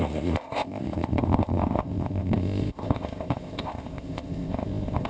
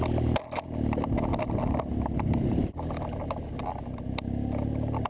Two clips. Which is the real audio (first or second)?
second